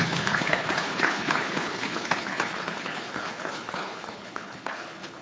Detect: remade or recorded remade